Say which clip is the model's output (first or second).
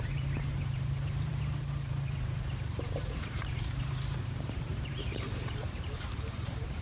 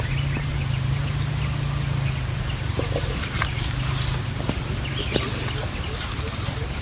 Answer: first